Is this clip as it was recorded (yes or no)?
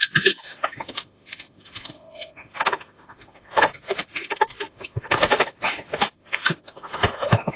no